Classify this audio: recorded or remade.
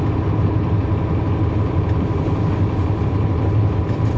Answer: recorded